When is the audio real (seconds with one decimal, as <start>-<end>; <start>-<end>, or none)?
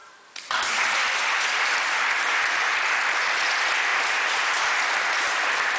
3.5-3.9; 4.6-5.8